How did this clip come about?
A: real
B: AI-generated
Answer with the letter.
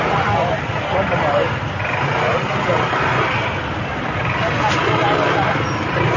A